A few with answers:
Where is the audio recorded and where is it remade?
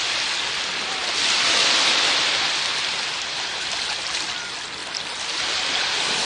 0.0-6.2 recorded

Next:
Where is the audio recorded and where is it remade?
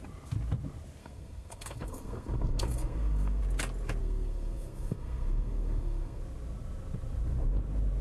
0.0-1.0 recorded; 1.0-3.4 remade; 3.4-4.0 recorded; 4.0-6.2 remade; 6.2-8.0 recorded